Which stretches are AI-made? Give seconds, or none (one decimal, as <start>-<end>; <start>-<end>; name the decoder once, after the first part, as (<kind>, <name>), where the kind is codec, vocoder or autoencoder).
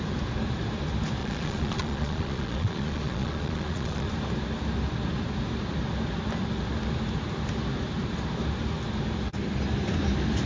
1.2-4.1 (vocoder, Vocos)